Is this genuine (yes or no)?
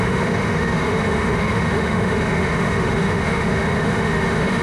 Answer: no